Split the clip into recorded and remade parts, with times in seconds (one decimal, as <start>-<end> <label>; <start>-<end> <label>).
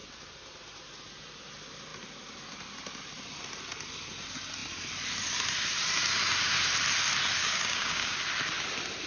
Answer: 0.0-7.4 recorded; 7.4-8.2 remade; 8.2-9.1 recorded